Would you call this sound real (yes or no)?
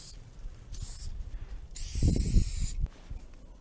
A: yes